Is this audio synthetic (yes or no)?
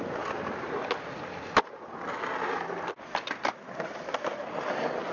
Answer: no